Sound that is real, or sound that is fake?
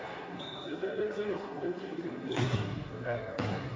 fake